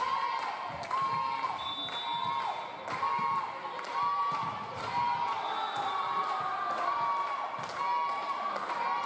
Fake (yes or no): no